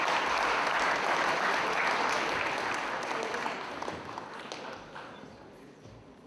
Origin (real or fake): real